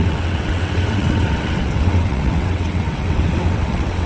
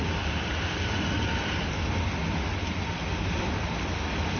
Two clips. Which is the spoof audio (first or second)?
first